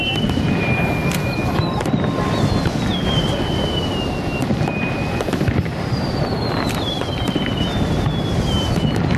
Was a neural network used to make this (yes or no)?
no